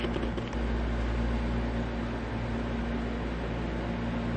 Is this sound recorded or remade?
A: recorded